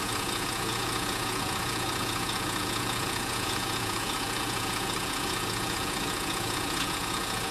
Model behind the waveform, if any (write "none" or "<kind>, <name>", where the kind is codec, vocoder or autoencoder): vocoder, Vocos